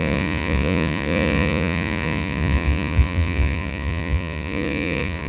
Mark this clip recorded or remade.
remade